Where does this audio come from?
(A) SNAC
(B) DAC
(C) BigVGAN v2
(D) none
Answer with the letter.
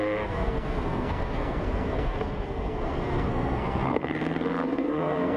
A